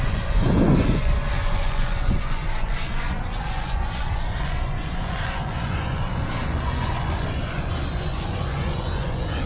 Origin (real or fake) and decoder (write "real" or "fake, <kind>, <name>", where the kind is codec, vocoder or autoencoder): fake, vocoder, Vocos